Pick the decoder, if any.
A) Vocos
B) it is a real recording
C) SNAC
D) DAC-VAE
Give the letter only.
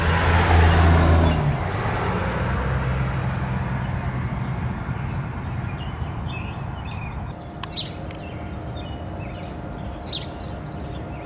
B